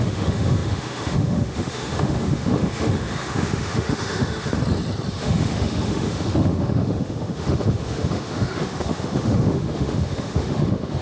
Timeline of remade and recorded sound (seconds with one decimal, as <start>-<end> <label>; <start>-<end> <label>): 0.0-4.6 remade; 4.6-5.1 recorded; 5.1-11.0 remade